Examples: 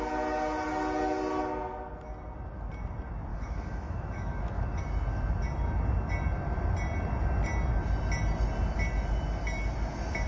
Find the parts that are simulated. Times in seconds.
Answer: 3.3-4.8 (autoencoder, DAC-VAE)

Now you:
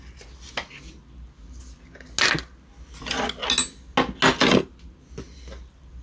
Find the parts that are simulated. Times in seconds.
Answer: none